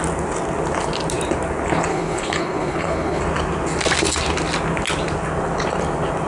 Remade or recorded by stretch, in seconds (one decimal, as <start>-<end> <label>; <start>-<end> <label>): 0.0-1.9 recorded; 1.9-3.2 remade; 3.2-6.3 recorded